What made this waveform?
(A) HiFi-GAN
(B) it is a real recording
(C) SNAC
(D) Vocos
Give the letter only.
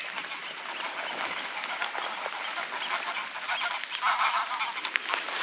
B